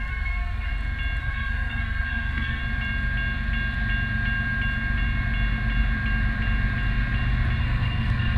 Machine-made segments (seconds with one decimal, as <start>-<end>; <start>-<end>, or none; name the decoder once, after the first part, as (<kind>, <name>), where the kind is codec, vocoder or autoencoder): 0.0-0.7 (codec, SNAC); 1.2-2.6; 7.6-8.4